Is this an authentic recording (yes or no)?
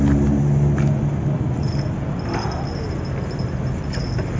yes